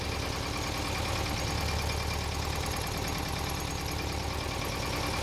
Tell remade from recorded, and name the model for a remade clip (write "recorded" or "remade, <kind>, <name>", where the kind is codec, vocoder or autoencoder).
recorded